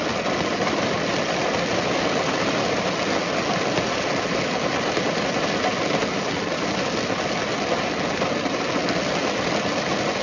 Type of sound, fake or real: real